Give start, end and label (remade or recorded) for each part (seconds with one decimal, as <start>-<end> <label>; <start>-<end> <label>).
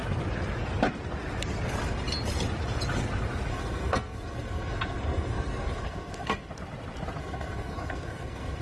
0.0-3.5 recorded; 3.5-6.5 remade; 6.5-7.2 recorded; 7.2-8.6 remade